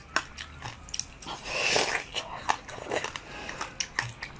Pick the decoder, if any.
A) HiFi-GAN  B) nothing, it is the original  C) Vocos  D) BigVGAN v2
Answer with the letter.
B